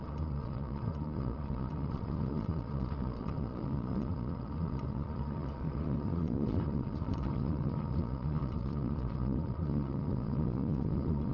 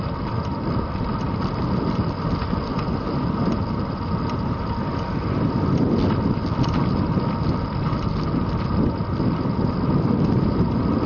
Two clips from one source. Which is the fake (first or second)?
first